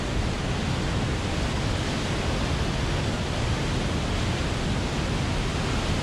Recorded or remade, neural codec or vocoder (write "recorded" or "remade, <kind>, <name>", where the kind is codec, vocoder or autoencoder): recorded